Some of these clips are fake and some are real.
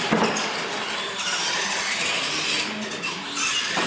real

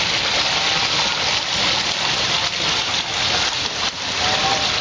real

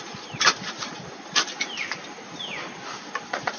real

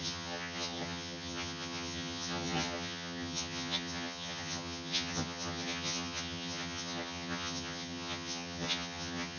fake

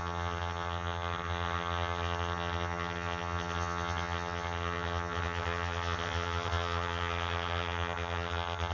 fake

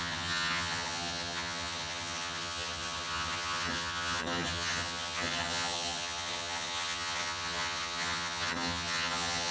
fake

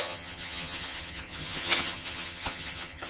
fake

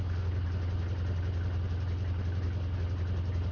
real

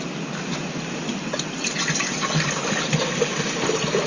real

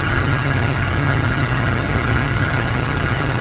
fake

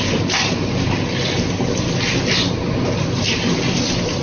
real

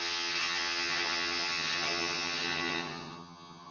fake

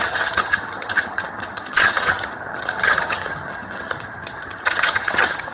fake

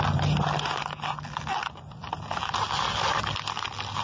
real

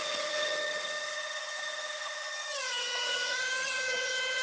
fake